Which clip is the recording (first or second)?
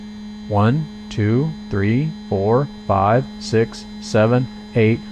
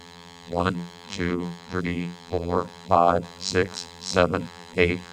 first